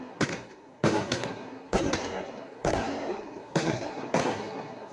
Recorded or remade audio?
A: remade